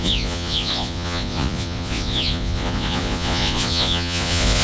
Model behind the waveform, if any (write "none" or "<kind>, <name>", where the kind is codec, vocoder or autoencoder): vocoder, Vocos